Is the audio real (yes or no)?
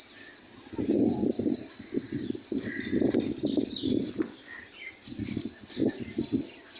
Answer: no